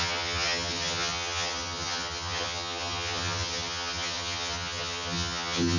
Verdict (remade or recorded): remade